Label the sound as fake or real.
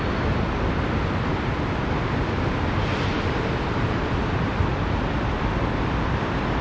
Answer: real